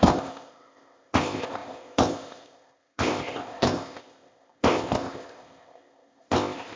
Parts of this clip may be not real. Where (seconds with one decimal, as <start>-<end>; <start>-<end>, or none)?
0.0-6.8